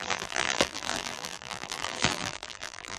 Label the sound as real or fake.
fake